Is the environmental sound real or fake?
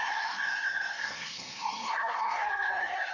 fake